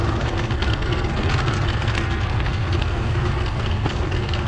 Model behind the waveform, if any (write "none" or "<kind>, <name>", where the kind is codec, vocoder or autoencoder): codec, SNAC